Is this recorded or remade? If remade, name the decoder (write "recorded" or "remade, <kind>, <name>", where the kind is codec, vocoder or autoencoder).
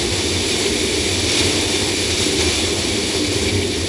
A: recorded